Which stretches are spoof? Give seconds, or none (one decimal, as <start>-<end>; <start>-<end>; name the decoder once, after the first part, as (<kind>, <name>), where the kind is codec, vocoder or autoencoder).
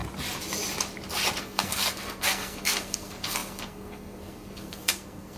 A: 1.4-5.4 (codec, SNAC)